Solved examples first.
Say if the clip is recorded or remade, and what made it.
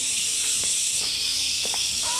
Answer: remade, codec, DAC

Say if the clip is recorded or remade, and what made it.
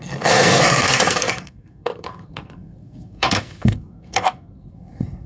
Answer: remade, codec, SNAC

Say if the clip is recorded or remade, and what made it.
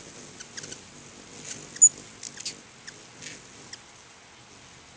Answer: recorded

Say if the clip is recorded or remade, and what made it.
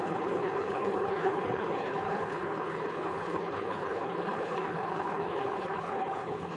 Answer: remade, codec, HILCodec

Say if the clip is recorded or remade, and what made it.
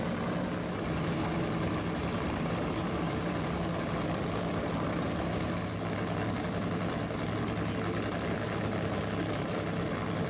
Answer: recorded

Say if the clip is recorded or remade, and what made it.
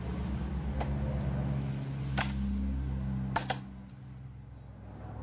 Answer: recorded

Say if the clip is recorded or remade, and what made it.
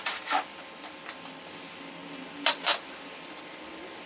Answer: recorded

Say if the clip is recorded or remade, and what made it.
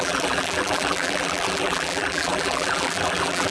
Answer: remade, vocoder, BigVGAN v2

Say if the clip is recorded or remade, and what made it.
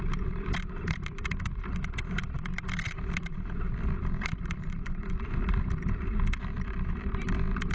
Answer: remade, vocoder, BigVGAN v2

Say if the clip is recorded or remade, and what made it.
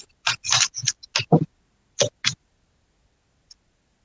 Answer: recorded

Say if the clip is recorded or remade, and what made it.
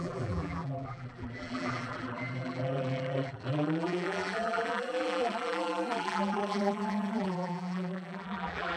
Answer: remade, vocoder, BigVGAN v2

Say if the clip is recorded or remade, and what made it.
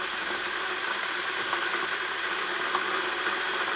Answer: remade, vocoder, BigVGAN v2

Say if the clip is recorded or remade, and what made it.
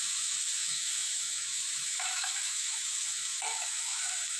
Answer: remade, autoencoder, DAC-VAE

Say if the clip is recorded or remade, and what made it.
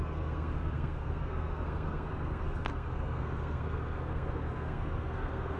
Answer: remade, codec, SNAC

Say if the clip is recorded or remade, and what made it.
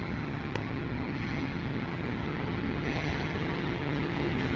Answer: remade, vocoder, HiFi-GAN